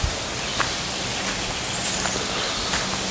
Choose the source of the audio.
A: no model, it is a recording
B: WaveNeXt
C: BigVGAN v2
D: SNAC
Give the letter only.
A